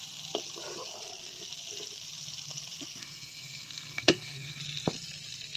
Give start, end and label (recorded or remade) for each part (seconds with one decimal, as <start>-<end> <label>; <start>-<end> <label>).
0.0-3.0 recorded; 3.0-4.6 remade; 4.6-5.6 recorded